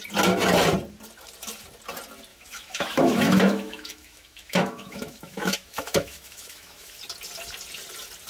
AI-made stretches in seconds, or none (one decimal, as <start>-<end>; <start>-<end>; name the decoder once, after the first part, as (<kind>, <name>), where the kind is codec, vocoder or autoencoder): 2.3-7.0 (autoencoder, DAC-VAE)